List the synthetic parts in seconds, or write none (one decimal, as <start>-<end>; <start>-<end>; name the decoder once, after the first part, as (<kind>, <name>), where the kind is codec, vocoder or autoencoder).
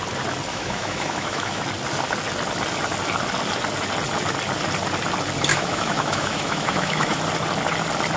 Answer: 0.5-1.6 (autoencoder, DAC-VAE); 5.5-7.2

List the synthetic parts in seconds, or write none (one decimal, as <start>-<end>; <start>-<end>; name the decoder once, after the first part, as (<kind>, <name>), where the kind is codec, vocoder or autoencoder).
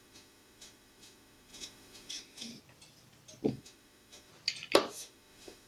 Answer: 0.0-2.5 (autoencoder, DAC-VAE); 3.5-4.3; 4.9-5.7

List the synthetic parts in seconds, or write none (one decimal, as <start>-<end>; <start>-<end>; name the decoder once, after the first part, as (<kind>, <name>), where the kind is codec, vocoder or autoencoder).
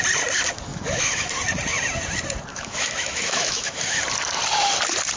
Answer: 0.7-1.3 (autoencoder, DAC-VAE); 2.5-4.0